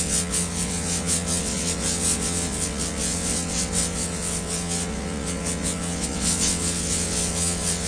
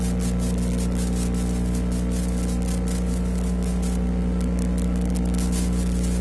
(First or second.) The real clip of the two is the second